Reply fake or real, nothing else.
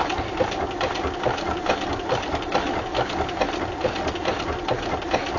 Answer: real